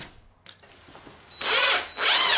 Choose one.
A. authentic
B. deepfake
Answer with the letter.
A